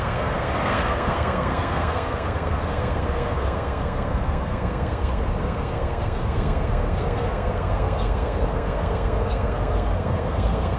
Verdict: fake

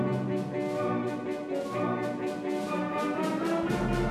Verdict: real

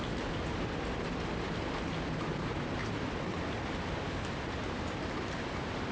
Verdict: real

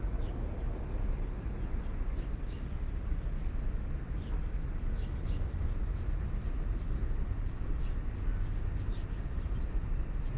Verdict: real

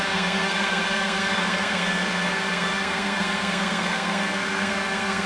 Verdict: fake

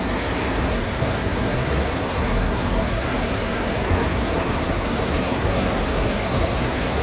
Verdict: fake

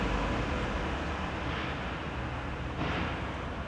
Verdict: real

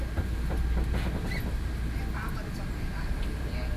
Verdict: real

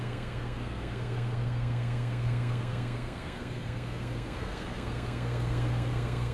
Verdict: fake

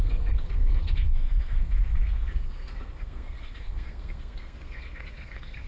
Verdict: fake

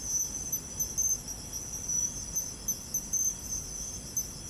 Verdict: real